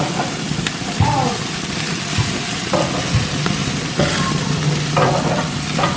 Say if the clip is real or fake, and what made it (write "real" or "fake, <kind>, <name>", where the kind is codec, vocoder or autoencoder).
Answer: real